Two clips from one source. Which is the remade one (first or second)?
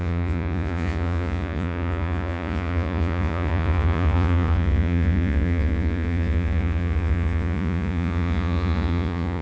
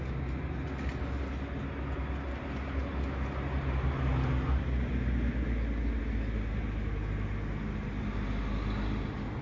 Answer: first